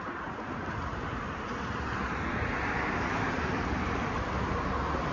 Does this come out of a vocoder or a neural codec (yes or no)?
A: no